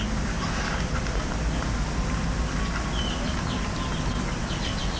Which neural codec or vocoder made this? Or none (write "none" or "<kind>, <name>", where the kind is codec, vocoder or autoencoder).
none